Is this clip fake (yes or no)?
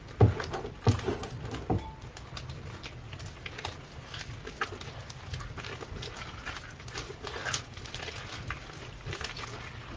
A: no